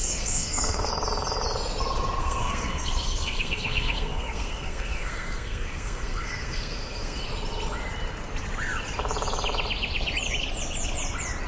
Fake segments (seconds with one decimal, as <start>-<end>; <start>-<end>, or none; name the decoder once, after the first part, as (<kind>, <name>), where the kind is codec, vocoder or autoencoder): 0.0-0.9 (codec, SNAC); 2.2-7.2